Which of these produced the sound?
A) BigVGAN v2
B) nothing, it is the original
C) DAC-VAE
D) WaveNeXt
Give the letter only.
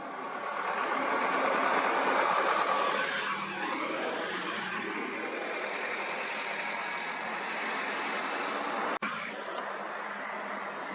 B